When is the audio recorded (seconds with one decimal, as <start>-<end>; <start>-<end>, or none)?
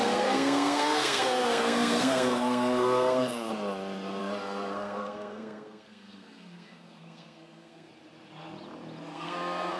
3.5-4.2; 7.9-9.1